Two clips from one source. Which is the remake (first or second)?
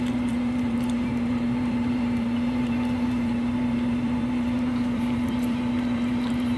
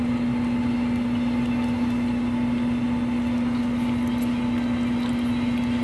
first